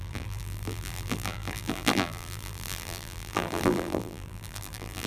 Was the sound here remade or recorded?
remade